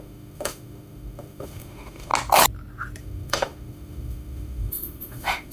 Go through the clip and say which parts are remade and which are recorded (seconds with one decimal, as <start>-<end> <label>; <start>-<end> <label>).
0.0-2.1 remade; 2.1-3.0 recorded; 3.0-5.5 remade